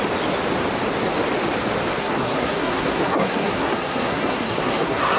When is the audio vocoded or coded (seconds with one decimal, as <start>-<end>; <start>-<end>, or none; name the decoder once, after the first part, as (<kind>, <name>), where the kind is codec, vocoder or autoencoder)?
2.0-5.2 (codec, SNAC)